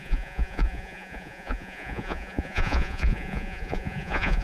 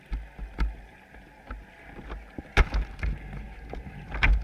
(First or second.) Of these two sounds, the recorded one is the second